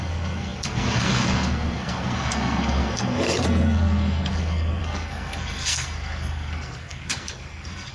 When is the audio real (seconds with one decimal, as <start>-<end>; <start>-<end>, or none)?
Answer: none